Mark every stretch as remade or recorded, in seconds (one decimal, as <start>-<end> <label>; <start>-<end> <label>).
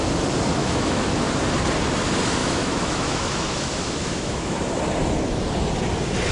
0.0-0.6 recorded; 0.6-1.3 remade; 1.3-2.4 recorded; 2.4-4.6 remade; 4.6-6.3 recorded